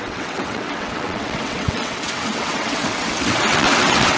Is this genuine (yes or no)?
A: no